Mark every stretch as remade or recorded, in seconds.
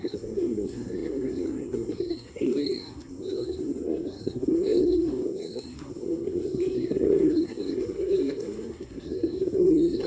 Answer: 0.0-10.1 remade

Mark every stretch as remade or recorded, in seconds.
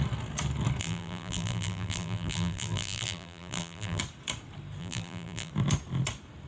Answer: 0.0-0.8 recorded; 0.8-4.0 remade; 4.0-4.8 recorded; 4.8-5.5 remade; 5.5-6.5 recorded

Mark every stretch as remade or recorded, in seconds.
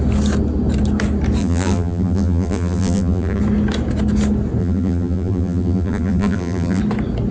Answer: 0.0-1.4 recorded; 1.4-3.4 remade; 3.4-4.6 recorded; 4.6-6.8 remade; 6.8-7.3 recorded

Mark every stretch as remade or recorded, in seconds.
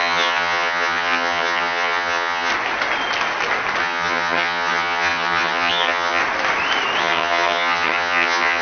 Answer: 0.0-2.5 remade; 2.5-3.8 recorded; 3.8-6.2 remade; 6.2-7.0 recorded; 7.0-8.6 remade